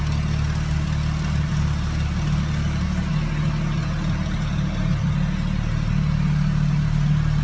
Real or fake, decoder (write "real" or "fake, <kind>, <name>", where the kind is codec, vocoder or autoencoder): real